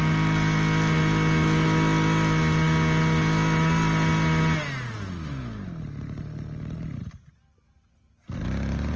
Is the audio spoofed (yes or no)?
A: no